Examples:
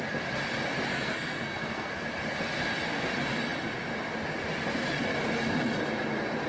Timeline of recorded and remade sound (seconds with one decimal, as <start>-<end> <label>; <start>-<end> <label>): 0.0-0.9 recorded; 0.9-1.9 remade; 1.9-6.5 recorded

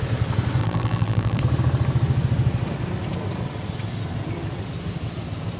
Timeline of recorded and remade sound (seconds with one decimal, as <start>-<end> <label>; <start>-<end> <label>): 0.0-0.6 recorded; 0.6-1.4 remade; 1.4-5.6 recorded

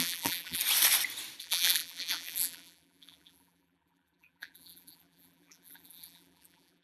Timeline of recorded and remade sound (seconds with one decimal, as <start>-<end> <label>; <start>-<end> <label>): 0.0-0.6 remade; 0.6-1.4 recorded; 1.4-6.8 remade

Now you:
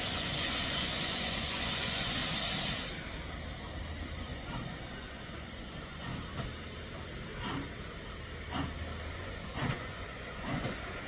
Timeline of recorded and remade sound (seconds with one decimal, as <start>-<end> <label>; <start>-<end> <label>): 0.0-2.2 remade; 2.2-4.2 recorded; 4.2-6.1 remade; 6.1-9.1 recorded; 9.1-11.1 remade

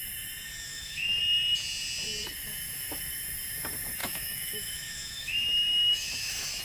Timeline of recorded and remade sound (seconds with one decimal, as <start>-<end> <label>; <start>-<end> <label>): 0.0-0.7 recorded; 0.7-1.2 remade; 1.2-4.0 recorded; 4.0-6.6 remade